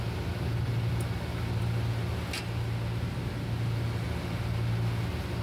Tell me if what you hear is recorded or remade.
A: recorded